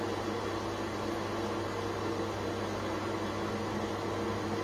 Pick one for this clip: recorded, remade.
recorded